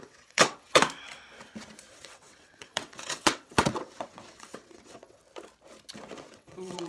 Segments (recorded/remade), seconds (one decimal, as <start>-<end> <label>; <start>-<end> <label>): 0.0-0.8 remade; 0.8-1.9 recorded; 1.9-5.2 remade; 5.2-6.3 recorded; 6.3-6.9 remade